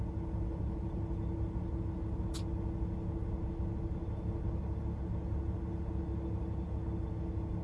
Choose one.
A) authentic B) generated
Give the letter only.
A